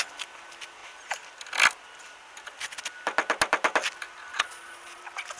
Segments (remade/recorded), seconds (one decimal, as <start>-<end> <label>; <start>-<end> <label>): 0.0-4.3 recorded; 4.3-5.0 remade; 5.0-5.4 recorded